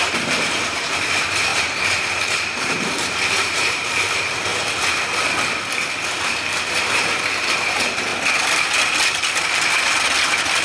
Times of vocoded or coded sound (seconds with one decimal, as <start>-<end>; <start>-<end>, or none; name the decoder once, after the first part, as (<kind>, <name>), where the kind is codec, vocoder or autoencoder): 0.0-4.5 (vocoder, BigVGAN v2); 6.8-8.1